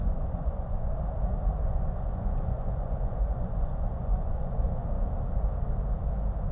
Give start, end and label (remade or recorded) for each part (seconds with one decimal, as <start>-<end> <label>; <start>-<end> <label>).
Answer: 0.0-0.9 remade; 0.9-1.6 recorded; 1.6-5.1 remade; 5.1-6.5 recorded